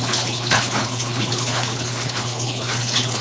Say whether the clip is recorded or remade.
remade